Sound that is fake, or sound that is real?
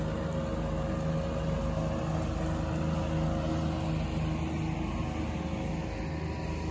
real